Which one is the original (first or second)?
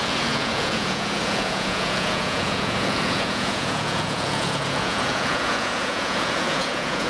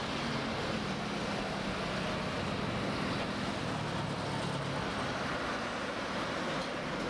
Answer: second